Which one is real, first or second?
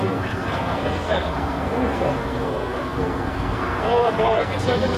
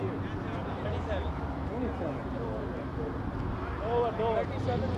second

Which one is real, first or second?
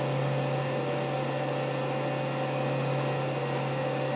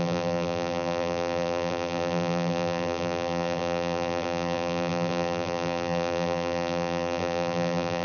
first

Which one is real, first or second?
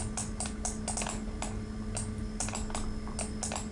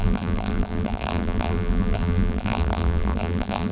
first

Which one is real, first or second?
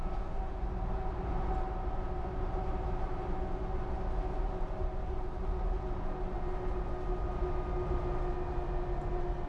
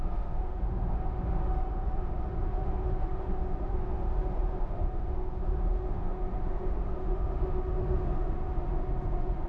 first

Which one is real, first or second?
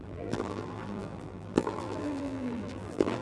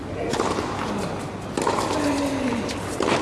second